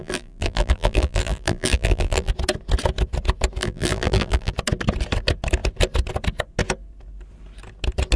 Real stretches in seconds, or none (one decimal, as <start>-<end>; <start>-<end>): 2.3-3.6; 4.5-8.2